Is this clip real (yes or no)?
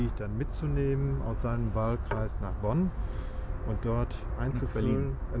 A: yes